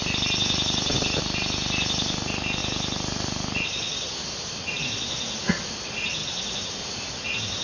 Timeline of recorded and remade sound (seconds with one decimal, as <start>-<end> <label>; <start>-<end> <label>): 0.0-7.6 recorded